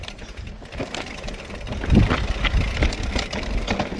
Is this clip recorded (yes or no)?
yes